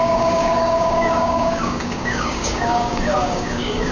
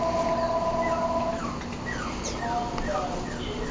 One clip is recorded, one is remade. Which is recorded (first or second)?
second